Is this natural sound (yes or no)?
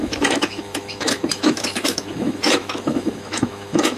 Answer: no